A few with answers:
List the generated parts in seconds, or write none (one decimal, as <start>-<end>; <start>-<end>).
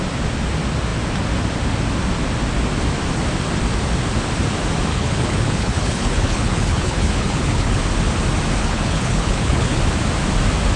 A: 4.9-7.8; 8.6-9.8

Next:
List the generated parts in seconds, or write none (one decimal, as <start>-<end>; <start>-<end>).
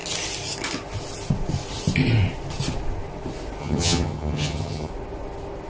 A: 3.6-4.9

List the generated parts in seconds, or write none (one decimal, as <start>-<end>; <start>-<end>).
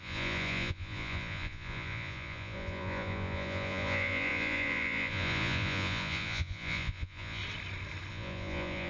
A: 0.0-7.4; 8.1-8.9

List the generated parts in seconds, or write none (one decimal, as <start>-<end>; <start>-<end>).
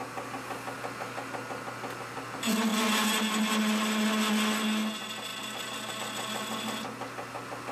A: none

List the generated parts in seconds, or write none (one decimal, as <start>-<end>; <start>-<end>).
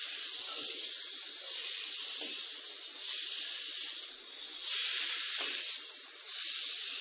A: none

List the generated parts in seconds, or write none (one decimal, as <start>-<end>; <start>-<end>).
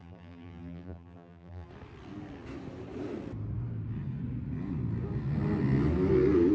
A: 0.0-1.7